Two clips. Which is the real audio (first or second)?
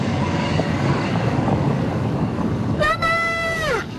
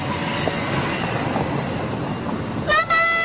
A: second